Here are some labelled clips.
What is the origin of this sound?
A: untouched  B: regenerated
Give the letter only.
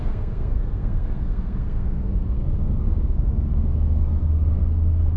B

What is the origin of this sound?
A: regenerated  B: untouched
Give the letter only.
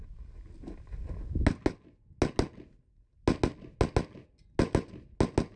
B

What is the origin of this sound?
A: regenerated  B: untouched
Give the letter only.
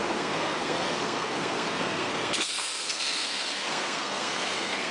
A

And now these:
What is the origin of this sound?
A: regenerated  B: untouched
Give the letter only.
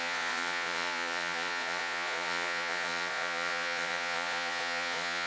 A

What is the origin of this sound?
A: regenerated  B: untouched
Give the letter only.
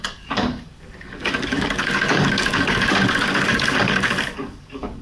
A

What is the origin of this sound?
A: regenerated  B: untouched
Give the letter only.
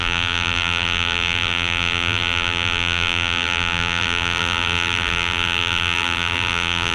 A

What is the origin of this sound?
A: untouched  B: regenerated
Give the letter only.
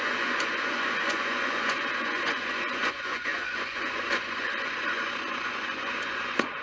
B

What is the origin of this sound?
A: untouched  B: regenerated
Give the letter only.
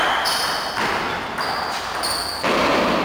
A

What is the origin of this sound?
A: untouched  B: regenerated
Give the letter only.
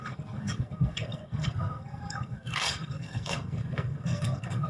B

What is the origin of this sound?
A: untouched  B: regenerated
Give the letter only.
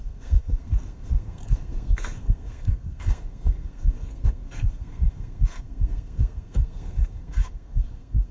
B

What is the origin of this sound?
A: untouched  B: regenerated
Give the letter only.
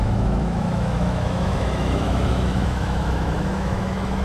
B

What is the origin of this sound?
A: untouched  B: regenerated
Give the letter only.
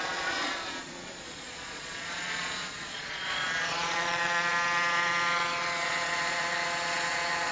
B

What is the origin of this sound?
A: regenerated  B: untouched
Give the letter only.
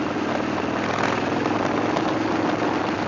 B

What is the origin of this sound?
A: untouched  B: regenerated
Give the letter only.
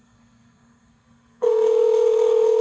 B